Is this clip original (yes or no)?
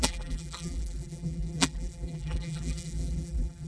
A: no